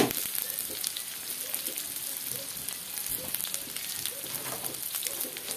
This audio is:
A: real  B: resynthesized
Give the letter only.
A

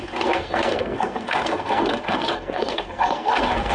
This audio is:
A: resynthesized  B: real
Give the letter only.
A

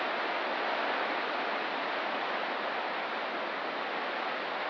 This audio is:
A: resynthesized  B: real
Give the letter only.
B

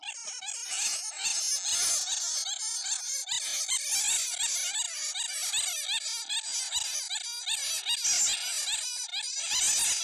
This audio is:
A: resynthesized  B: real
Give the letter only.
B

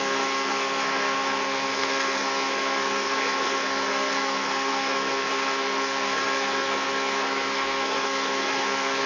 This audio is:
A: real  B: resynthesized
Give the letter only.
B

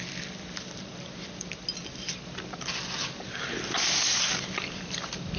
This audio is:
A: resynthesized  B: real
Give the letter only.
B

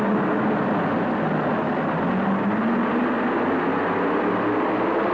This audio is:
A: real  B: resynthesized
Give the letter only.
A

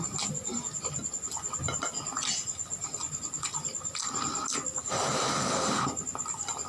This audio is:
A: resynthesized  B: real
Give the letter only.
B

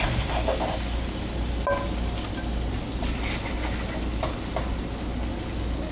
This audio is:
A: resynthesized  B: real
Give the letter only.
B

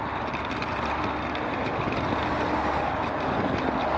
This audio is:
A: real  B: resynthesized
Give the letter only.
A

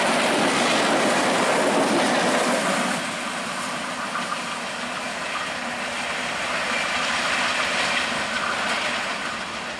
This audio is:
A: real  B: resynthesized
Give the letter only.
A